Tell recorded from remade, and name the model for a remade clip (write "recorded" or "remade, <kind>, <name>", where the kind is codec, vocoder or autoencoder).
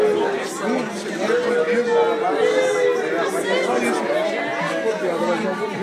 recorded